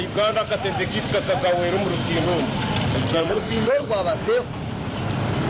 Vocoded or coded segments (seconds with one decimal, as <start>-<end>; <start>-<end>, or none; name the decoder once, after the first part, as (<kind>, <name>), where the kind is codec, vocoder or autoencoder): 3.0-3.9 (codec, SNAC)